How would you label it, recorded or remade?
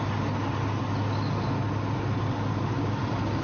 recorded